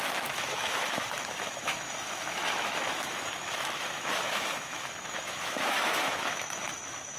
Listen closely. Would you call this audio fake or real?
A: fake